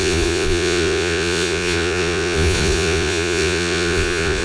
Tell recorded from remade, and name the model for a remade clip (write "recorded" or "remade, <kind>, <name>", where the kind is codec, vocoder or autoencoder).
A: remade, vocoder, Vocos